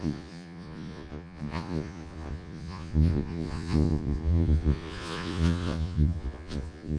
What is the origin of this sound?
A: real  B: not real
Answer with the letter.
B